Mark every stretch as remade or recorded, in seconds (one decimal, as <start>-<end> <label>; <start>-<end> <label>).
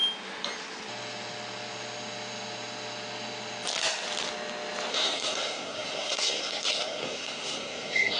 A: 0.0-4.9 recorded; 4.9-8.2 remade